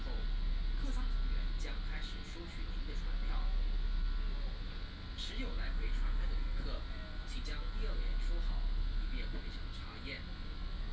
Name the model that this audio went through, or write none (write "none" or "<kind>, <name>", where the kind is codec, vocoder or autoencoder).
none